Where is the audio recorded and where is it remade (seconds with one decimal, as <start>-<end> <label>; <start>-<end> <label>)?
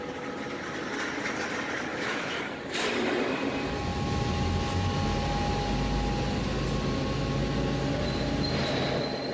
0.0-1.9 recorded; 1.9-2.4 remade; 2.4-9.3 recorded